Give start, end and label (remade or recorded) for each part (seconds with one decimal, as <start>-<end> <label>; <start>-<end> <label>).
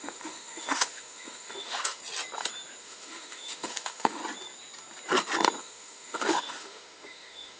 0.0-2.0 remade; 2.0-2.8 recorded; 2.8-4.2 remade; 4.2-5.6 recorded; 5.6-7.6 remade